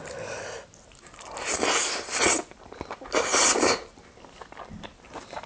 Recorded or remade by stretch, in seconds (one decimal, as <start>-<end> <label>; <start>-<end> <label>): 0.0-5.5 recorded